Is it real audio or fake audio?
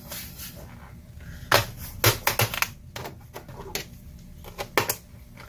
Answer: real